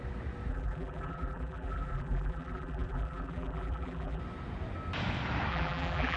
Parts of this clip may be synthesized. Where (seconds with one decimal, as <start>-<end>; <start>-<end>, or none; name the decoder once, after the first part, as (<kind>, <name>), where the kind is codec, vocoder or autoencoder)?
0.5-4.2 (vocoder, BigVGAN v2); 5.5-6.2